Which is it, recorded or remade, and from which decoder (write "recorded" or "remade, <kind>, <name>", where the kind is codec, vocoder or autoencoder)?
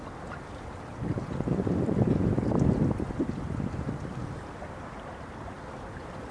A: recorded